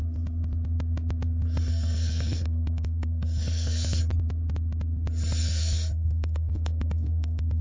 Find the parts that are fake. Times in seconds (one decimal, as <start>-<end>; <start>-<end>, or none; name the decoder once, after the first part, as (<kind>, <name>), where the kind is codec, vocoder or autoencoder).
1.7-4.0 (codec, SNAC); 5.4-7.6